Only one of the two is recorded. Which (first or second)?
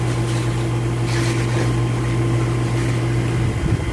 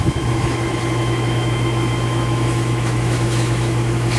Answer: first